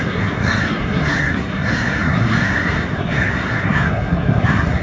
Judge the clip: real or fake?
fake